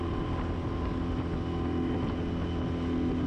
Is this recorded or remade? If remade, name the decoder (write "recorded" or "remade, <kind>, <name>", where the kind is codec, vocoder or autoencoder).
recorded